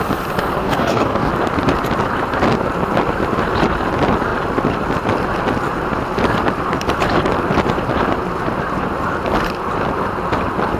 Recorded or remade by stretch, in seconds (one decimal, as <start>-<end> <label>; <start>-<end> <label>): 0.0-0.6 recorded; 0.6-1.3 remade; 1.3-10.8 recorded